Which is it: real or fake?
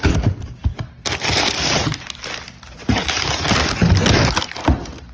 real